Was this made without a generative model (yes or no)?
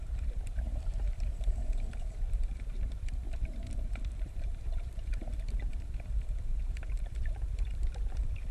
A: no